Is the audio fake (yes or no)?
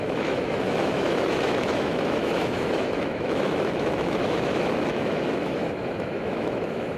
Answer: yes